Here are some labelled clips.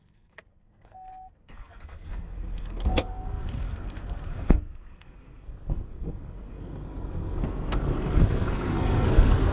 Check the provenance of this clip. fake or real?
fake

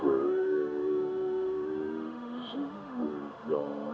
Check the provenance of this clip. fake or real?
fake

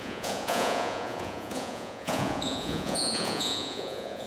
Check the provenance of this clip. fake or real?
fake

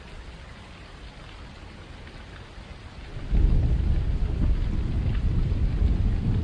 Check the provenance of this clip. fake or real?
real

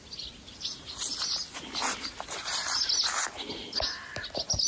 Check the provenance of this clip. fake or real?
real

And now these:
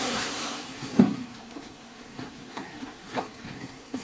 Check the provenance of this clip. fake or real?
fake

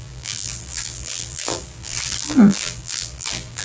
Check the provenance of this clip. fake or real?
fake